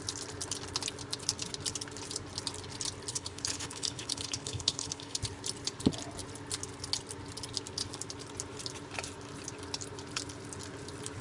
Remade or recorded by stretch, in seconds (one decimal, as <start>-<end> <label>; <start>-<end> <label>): 0.0-3.1 recorded; 3.1-5.2 remade; 5.2-11.2 recorded